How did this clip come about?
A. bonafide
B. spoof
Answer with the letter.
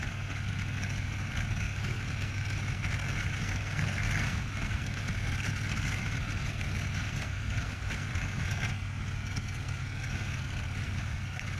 B